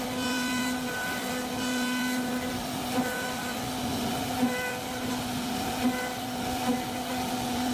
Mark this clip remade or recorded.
recorded